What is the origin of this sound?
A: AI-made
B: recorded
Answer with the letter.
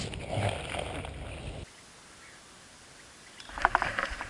B